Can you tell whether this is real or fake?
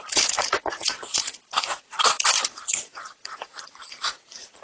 fake